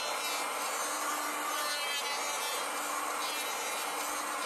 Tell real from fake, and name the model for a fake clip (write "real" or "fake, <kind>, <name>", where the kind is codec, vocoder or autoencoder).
real